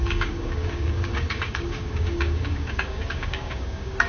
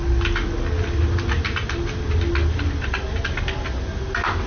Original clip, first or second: second